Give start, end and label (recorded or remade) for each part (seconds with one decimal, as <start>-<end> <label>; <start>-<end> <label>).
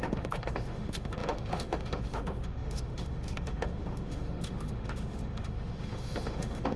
0.0-6.8 remade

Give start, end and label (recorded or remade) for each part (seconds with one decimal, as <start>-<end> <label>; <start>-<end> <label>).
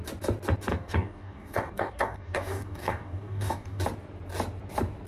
0.0-0.7 recorded; 0.7-3.8 remade; 3.8-5.1 recorded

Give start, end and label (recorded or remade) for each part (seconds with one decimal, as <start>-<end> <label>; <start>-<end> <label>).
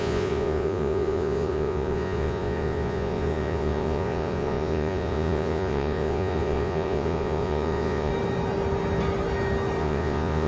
0.0-8.1 remade; 8.1-9.8 recorded; 9.8-10.5 remade